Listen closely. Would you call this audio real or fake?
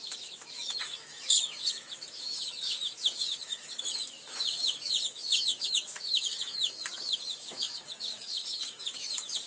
fake